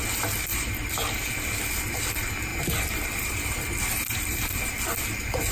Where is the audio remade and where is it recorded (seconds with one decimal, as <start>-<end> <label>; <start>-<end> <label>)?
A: 0.0-0.5 recorded; 0.5-1.3 remade; 1.3-2.5 recorded; 2.5-4.7 remade; 4.7-5.5 recorded